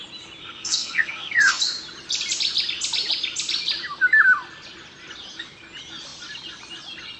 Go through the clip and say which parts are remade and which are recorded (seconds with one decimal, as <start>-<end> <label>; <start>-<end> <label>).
0.0-0.4 recorded; 0.4-1.6 remade; 1.6-7.2 recorded